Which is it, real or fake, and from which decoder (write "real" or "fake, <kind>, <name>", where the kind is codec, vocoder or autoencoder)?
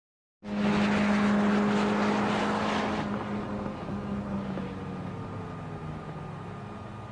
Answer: real